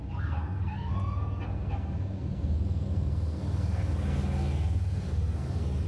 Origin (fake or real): fake